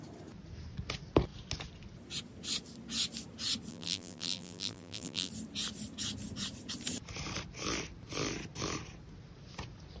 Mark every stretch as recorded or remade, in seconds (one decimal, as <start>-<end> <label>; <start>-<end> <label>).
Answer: 0.0-3.7 recorded; 3.7-5.3 remade; 5.3-10.0 recorded